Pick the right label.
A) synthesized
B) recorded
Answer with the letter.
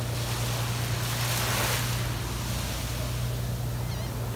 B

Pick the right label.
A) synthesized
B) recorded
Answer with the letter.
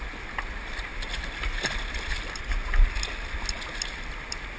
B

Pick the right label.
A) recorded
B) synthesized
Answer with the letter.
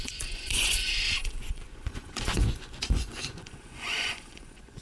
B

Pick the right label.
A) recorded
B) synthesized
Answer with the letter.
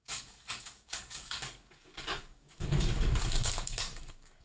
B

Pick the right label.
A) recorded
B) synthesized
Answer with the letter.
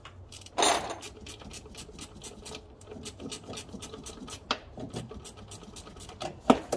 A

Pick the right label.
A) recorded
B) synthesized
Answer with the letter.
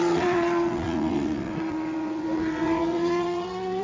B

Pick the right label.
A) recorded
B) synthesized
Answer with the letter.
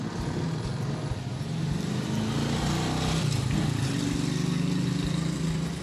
A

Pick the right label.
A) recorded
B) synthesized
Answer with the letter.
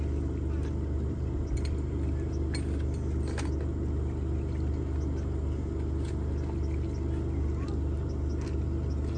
A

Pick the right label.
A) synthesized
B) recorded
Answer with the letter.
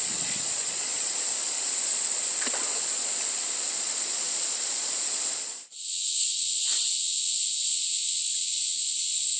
A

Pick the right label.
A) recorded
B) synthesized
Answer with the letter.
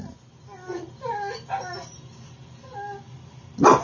A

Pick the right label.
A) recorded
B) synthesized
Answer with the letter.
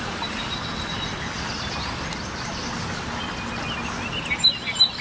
A